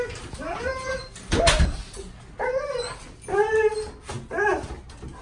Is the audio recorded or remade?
recorded